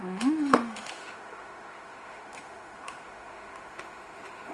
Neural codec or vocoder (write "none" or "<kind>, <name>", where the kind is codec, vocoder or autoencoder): autoencoder, DAC-VAE